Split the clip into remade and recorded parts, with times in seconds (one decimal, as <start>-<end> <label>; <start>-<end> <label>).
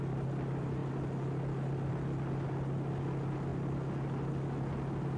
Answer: 0.0-5.2 recorded